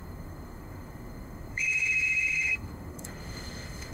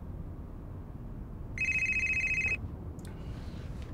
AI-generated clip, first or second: first